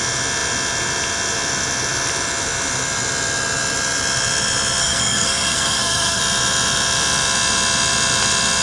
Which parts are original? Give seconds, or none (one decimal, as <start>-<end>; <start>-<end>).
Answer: 0.0-4.8; 6.2-8.6